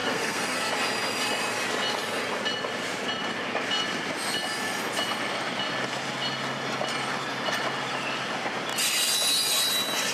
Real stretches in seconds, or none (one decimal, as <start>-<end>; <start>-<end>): 0.7-10.1

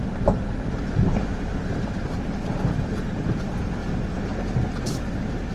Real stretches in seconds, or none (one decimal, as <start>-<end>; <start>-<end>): 3.8-5.5